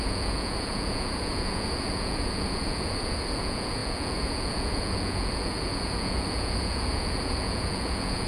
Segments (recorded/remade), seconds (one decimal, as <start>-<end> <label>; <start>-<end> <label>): 0.0-8.3 remade